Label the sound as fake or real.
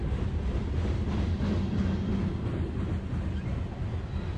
real